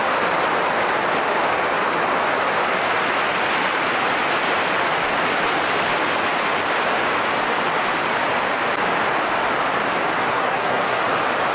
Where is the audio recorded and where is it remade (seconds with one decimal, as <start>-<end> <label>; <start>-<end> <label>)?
0.0-10.3 recorded; 10.3-11.0 remade; 11.0-11.5 recorded